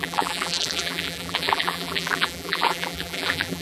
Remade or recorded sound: remade